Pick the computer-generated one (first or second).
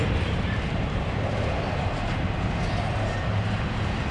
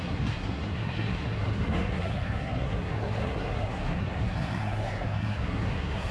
second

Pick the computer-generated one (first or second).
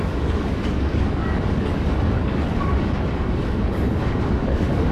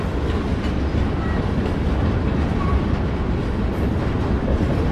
first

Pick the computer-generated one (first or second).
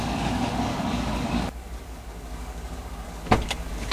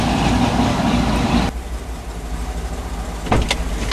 first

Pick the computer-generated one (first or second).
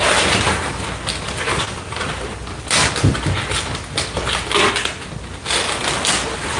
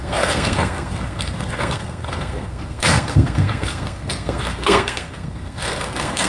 second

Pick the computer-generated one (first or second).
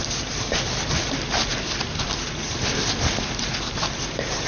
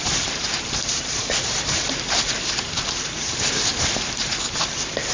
second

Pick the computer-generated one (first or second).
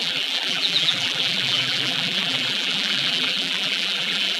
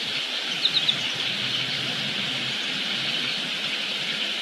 first